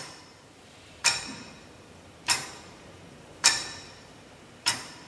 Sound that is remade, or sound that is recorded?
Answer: remade